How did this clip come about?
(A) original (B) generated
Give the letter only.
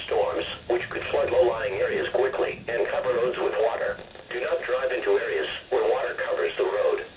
B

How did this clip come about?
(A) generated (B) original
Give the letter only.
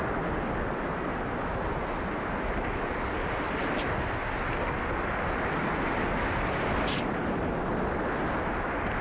B